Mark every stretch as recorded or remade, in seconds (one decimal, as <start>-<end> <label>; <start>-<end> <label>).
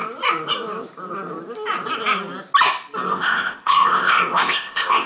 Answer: 0.0-3.1 recorded; 3.1-5.1 remade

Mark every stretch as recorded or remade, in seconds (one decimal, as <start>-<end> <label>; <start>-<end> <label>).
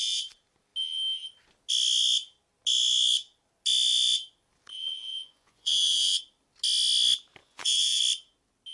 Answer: 0.0-4.7 recorded; 4.7-6.2 remade; 6.2-7.4 recorded; 7.4-8.0 remade; 8.0-8.7 recorded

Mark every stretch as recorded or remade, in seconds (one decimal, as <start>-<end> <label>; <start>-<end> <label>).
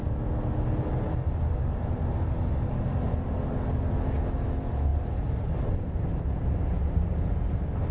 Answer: 0.0-7.9 recorded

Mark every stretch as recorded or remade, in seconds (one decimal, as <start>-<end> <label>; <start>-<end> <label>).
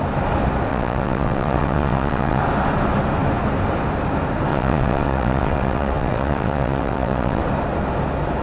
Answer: 0.0-0.7 recorded; 0.7-2.4 remade; 2.4-4.5 recorded; 4.5-7.4 remade; 7.4-8.4 recorded